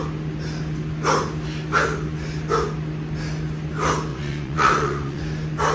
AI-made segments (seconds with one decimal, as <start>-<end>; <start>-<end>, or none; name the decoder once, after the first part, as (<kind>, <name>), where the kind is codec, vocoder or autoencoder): 4.1-5.2 (vocoder, Vocos)